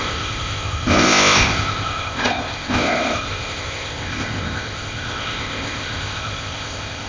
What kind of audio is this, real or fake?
fake